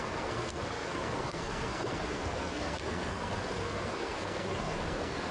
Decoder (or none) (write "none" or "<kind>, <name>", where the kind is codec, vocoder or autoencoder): codec, SNAC